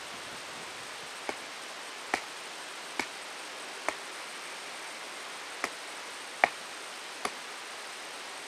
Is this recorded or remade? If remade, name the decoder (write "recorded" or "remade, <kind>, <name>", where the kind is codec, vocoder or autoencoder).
recorded